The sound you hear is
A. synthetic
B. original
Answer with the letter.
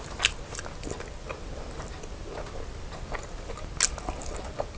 B